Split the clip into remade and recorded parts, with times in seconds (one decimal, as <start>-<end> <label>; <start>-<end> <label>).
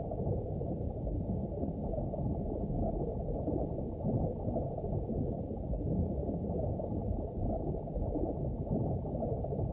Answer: 0.0-7.0 recorded; 7.0-8.3 remade; 8.3-9.7 recorded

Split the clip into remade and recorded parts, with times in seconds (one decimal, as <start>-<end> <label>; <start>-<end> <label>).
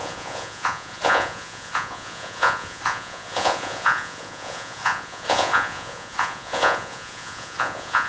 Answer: 0.0-8.1 remade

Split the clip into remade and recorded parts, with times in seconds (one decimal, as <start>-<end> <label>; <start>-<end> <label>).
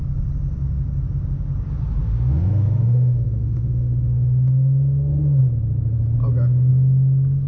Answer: 0.0-2.0 recorded; 2.0-5.4 remade; 5.4-7.5 recorded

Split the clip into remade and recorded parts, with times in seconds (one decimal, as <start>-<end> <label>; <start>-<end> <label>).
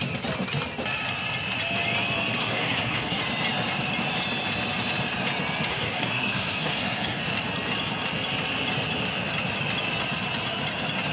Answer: 0.0-2.4 recorded; 2.4-3.2 remade; 3.2-5.7 recorded; 5.7-7.2 remade; 7.2-11.1 recorded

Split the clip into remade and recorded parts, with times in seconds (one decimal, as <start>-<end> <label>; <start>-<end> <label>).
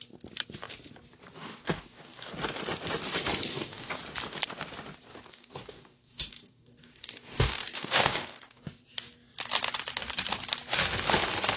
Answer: 0.0-1.4 recorded; 1.4-2.3 remade; 2.3-3.5 recorded; 3.5-4.0 remade; 4.0-5.3 recorded; 5.3-8.6 remade; 8.6-11.6 recorded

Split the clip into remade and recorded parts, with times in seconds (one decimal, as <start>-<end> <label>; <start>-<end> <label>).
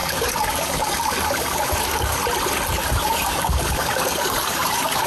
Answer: 0.0-2.2 remade; 2.2-2.7 recorded; 2.7-5.1 remade